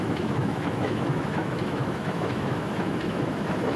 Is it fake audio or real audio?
fake